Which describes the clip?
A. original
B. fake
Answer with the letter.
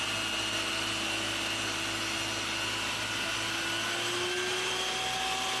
A